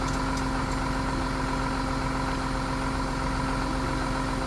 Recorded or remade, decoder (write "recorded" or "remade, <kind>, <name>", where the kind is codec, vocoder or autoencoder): recorded